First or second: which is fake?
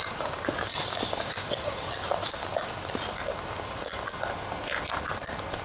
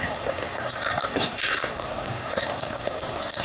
second